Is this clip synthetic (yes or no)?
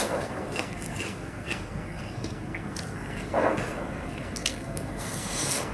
yes